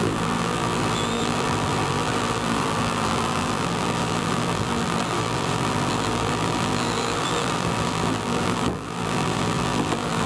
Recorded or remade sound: remade